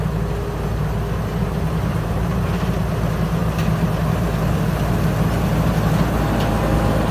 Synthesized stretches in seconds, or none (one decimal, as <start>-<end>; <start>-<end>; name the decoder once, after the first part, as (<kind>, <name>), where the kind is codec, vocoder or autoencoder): 1.3-2.4 (vocoder, BigVGAN v2)